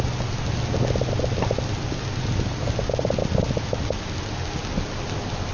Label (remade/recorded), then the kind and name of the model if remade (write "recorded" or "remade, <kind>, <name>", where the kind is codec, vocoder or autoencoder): recorded